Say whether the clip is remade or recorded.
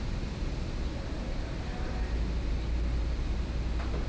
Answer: recorded